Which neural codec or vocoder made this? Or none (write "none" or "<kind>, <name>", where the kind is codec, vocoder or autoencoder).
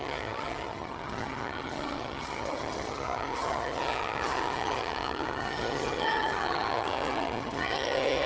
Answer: vocoder, HiFi-GAN